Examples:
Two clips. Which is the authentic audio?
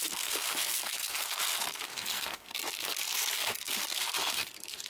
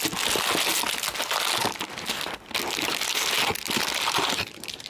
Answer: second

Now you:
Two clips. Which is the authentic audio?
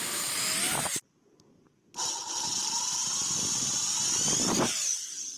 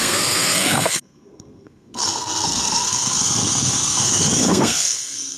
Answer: first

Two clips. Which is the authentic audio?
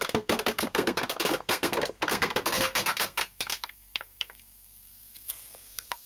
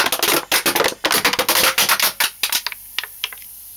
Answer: second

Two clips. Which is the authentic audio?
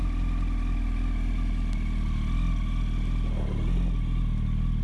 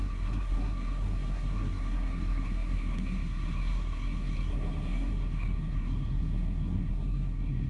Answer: first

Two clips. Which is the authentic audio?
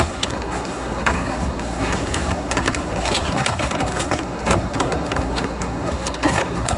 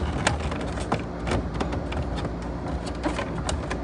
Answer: second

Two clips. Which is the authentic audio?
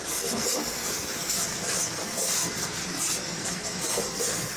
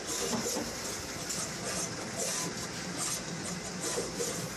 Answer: second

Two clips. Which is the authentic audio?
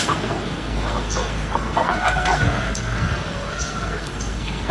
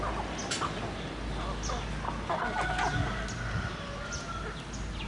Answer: second